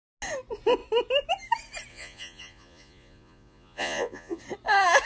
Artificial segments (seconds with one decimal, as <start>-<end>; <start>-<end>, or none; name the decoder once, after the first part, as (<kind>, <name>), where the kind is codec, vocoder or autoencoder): 1.9-4.4 (vocoder, Vocos)